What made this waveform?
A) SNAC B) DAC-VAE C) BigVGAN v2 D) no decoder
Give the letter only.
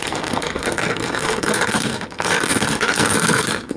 A